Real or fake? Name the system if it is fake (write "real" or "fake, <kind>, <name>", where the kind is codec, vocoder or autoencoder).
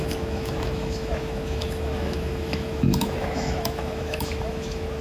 fake, autoencoder, DAC-VAE